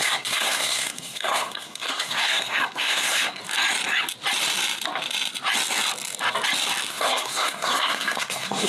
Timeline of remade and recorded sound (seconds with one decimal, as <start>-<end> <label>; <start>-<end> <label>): 0.0-3.4 remade; 3.4-6.9 recorded; 6.9-8.7 remade